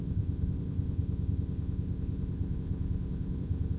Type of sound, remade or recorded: remade